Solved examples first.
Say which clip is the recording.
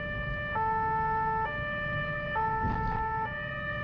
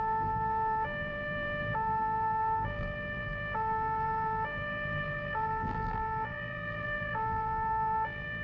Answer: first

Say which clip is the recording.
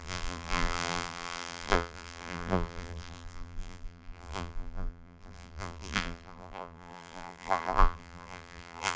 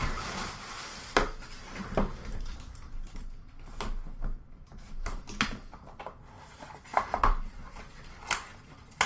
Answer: second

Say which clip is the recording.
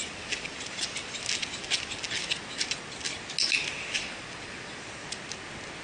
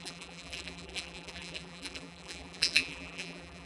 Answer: first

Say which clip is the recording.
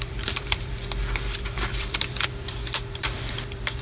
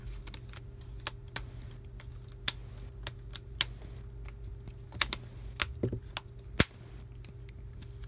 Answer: second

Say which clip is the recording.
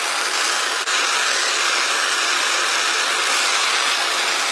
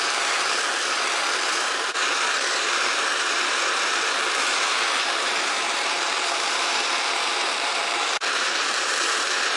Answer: first